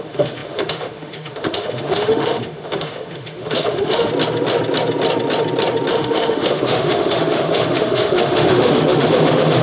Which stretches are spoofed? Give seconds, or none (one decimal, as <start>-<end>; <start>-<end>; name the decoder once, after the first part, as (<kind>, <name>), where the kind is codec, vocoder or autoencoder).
0.0-4.1 (autoencoder, DAC-VAE); 5.9-9.6